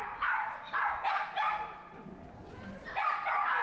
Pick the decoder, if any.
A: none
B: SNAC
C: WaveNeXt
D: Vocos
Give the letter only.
A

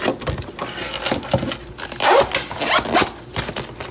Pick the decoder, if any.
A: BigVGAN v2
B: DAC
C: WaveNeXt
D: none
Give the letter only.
D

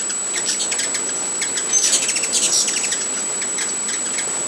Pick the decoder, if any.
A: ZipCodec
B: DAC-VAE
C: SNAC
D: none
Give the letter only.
D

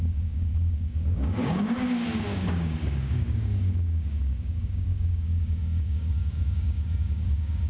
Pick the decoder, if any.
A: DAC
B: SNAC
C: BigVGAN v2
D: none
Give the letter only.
A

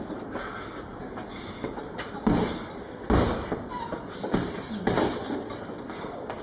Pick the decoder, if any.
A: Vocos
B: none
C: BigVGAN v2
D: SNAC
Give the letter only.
C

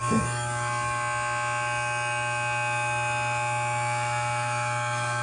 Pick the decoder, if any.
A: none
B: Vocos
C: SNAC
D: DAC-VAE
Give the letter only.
D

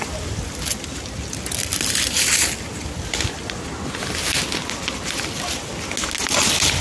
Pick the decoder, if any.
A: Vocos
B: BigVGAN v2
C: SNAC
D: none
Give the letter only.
D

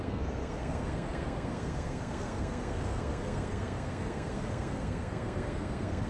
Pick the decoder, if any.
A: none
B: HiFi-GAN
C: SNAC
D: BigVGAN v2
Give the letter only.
C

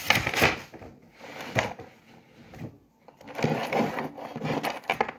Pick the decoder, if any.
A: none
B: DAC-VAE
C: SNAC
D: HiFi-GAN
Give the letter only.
A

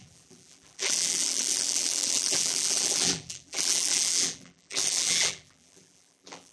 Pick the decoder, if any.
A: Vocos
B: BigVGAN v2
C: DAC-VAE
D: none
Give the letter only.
B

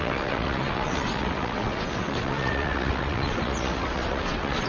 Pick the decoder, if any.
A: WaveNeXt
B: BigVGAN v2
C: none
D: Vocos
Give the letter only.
A